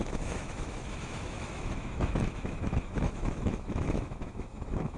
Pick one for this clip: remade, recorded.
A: remade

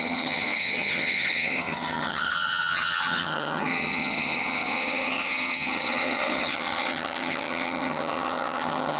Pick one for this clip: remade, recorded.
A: remade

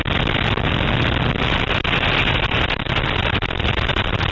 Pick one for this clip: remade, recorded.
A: recorded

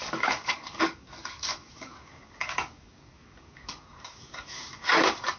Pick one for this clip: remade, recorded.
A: remade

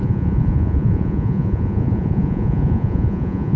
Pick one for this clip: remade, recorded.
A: remade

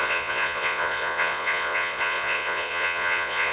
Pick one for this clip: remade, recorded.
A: remade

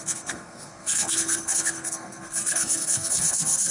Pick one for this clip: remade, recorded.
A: remade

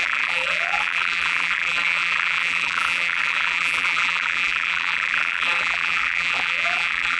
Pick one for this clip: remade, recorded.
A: remade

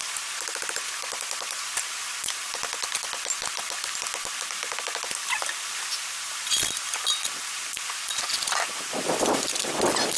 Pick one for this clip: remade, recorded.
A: recorded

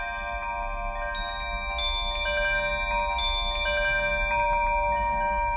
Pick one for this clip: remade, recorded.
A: recorded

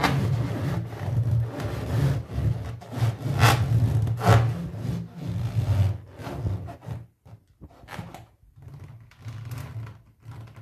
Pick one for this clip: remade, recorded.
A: recorded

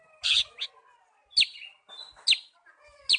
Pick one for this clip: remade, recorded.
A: recorded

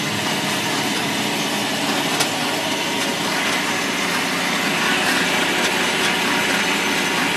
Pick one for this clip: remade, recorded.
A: recorded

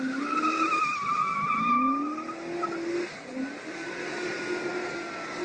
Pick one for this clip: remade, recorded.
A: recorded